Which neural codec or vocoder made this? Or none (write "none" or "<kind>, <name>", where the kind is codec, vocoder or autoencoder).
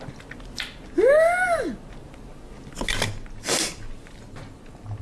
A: none